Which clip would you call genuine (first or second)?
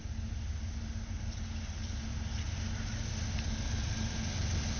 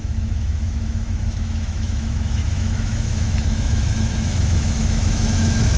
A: first